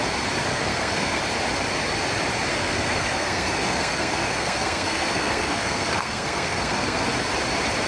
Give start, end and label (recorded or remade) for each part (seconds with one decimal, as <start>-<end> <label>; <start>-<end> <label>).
0.0-0.5 recorded; 0.5-1.2 remade; 1.2-2.5 recorded; 2.5-7.1 remade; 7.1-7.9 recorded